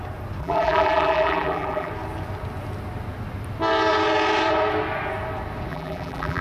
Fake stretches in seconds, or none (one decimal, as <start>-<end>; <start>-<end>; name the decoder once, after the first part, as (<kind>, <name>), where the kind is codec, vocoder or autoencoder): 0.4-1.9 (vocoder, BigVGAN v2); 5.7-6.4

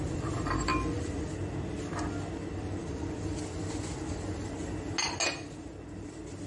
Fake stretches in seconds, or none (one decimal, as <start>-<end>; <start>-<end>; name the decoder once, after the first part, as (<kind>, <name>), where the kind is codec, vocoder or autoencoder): 0.7-1.2 (vocoder, BigVGAN v2); 2.8-3.4

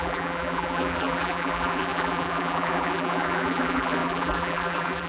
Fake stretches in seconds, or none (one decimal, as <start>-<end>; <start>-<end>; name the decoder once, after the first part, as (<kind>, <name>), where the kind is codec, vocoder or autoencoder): 0.0-5.1 (vocoder, BigVGAN v2)

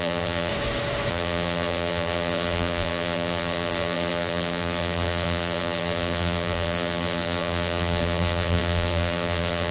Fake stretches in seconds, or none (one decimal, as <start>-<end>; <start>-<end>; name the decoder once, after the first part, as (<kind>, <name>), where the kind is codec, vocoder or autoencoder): 0.0-0.5 (vocoder, BigVGAN v2); 1.1-9.7